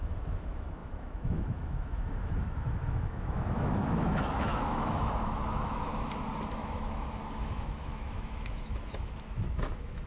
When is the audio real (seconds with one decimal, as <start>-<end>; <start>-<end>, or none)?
5.9-6.5